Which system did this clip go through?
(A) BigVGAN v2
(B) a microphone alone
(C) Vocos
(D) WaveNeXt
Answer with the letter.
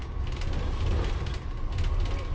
B